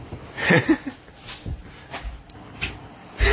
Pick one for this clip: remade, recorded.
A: recorded